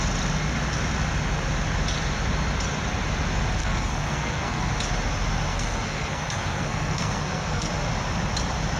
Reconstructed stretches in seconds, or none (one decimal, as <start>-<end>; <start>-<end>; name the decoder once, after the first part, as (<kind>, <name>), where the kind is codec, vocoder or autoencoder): 3.6-4.7 (codec, SNAC); 5.5-7.7